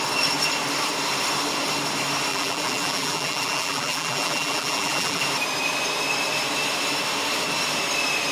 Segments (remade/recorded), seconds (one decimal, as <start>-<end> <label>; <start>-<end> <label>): 0.0-2.3 recorded; 2.3-5.2 remade; 5.2-8.3 recorded